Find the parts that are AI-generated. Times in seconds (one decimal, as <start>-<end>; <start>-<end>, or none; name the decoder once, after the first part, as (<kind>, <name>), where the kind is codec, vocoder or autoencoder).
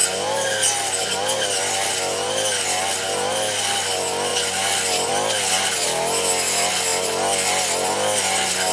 none